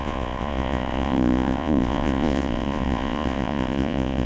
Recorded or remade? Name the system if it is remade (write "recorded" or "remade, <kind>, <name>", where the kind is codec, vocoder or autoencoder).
remade, vocoder, Vocos